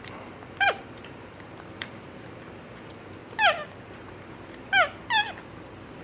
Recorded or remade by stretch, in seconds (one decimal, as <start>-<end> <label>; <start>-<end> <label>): 0.0-3.2 remade; 3.2-3.9 recorded; 3.9-4.7 remade; 4.7-6.0 recorded

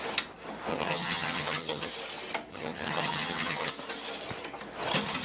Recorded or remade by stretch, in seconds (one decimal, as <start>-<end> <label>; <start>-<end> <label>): 0.0-0.7 recorded; 0.7-1.9 remade; 1.9-2.5 recorded; 2.5-3.7 remade; 3.7-5.2 recorded